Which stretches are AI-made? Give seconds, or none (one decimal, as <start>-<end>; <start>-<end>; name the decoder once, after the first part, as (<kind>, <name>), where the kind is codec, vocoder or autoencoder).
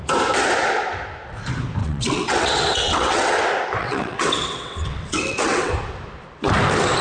1.8-3.4 (vocoder, WaveNeXt); 3.8-5.7